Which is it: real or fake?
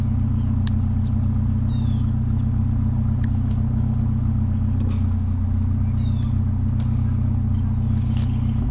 real